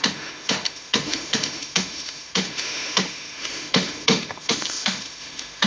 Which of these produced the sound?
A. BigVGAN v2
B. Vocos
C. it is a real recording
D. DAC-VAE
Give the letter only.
D